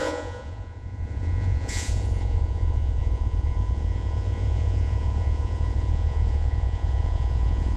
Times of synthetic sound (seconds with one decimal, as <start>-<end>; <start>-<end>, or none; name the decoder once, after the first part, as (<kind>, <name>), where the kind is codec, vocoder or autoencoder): 0.0-7.8 (vocoder, Vocos)